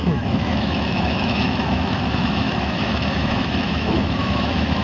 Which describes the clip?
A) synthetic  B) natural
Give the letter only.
A